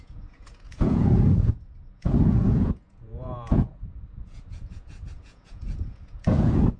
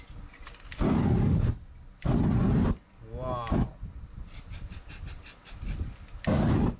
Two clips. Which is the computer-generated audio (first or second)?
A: first